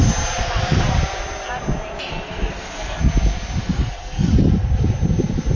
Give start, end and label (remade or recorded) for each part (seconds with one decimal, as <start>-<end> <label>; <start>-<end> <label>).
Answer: 0.0-2.1 recorded; 2.1-3.0 remade; 3.0-3.6 recorded; 3.6-4.3 remade; 4.3-5.6 recorded